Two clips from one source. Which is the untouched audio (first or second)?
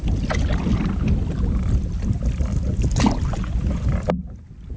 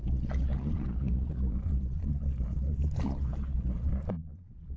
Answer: first